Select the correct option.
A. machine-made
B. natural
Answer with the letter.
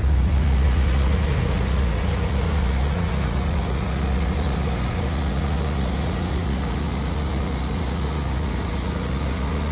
A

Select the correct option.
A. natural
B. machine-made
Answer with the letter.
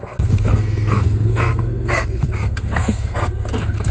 B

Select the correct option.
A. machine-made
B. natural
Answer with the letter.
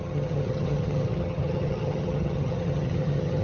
A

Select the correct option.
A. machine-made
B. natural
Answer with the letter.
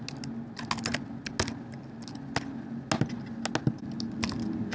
B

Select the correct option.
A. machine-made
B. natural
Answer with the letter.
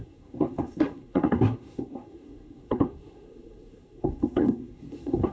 A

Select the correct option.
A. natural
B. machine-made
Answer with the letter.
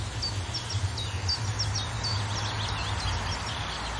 A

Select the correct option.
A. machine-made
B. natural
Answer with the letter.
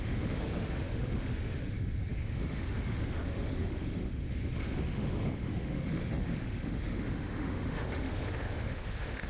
A